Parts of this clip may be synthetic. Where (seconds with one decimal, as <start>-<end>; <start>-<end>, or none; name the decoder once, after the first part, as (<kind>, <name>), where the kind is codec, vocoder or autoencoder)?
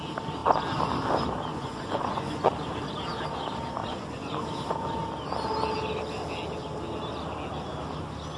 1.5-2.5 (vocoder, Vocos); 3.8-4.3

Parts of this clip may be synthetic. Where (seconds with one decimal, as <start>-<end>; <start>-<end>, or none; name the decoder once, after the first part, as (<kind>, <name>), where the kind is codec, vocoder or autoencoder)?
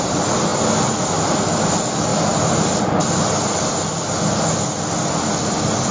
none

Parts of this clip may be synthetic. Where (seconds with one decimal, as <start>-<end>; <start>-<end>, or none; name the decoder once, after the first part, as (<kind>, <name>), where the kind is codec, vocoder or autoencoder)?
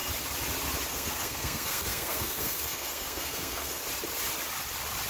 0.9-3.8 (codec, SNAC)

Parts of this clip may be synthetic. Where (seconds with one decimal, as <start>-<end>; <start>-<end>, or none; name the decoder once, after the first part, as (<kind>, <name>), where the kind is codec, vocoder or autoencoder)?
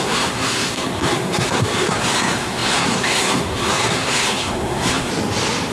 0.0-5.1 (codec, SNAC)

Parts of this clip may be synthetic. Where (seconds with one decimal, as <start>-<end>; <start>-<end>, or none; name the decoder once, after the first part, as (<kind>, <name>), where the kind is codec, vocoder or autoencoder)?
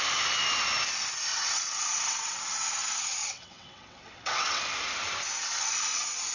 1.3-2.4 (vocoder, WaveNeXt); 3.2-4.6